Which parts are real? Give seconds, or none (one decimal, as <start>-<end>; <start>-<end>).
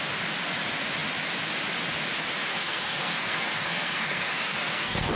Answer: 0.0-2.5